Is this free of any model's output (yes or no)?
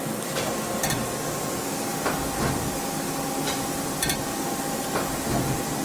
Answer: yes